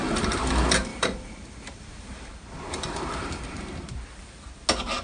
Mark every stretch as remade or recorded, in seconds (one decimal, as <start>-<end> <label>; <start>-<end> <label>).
0.0-0.9 recorded; 0.9-3.6 remade; 3.6-5.0 recorded